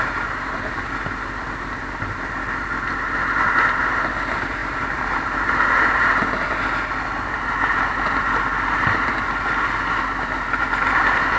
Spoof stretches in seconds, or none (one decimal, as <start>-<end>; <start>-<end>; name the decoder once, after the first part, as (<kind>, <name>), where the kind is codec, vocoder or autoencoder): 4.6-5.6 (vocoder, BigVGAN v2)